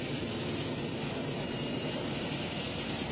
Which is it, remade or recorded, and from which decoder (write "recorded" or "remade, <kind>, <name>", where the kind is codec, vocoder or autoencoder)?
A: recorded